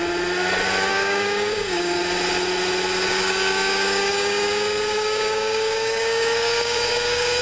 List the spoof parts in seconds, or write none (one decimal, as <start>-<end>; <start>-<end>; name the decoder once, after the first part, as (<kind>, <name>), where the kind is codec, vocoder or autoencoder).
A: 0.9-2.0 (codec, DAC); 3.1-7.4